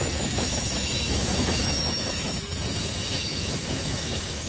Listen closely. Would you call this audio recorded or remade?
remade